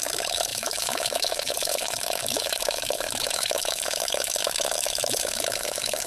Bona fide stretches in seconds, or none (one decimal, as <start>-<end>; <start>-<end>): none